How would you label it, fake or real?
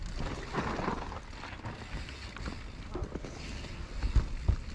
real